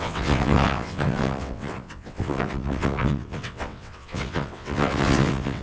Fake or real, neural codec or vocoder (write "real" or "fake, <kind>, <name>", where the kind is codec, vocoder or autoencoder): fake, vocoder, WaveNeXt